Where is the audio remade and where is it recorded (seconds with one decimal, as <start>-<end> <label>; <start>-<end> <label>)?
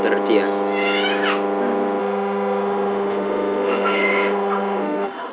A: 0.0-2.0 recorded; 2.0-5.3 remade